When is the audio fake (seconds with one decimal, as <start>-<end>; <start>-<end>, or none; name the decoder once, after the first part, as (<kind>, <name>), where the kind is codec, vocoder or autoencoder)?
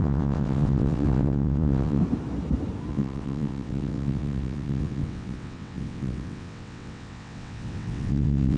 0.0-2.0 (vocoder, WaveNeXt); 2.9-8.6